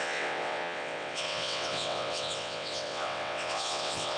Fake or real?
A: fake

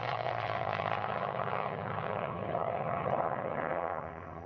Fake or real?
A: fake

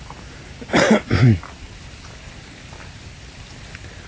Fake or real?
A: real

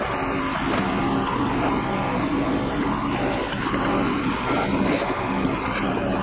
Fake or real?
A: real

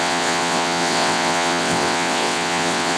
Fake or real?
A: fake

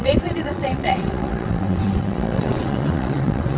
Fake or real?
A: fake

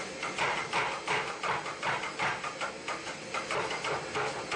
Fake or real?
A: real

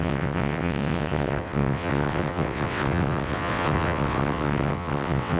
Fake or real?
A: fake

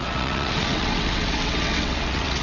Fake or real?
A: fake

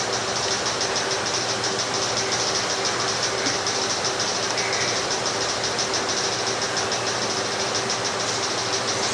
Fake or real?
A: real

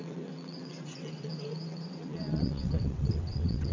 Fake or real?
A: fake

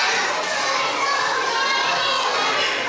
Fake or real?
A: real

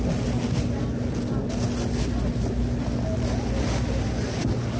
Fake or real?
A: real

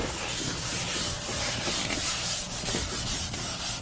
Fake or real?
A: real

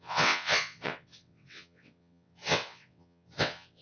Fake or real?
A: fake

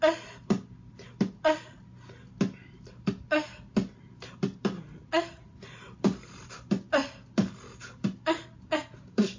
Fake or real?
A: real